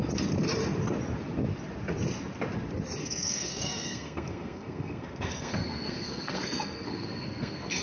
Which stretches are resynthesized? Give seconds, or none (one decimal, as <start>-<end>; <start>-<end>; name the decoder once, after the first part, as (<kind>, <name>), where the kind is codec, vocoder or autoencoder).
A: 3.0-7.8 (codec, SNAC)